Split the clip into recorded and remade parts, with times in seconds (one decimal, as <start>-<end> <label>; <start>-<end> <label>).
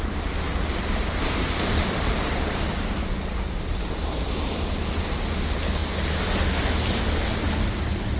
0.0-8.2 recorded